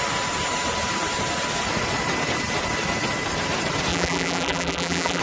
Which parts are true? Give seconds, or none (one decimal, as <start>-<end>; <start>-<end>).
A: 0.0-3.9